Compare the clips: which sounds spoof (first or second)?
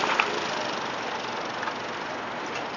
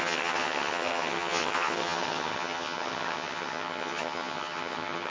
second